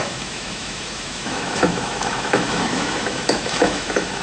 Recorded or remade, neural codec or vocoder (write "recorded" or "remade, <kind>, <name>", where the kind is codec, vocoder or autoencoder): remade, autoencoder, DAC-VAE